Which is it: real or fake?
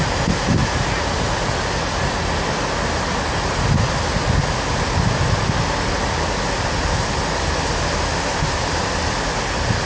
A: real